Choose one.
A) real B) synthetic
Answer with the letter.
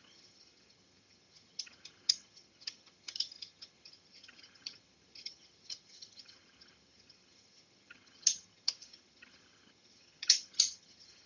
B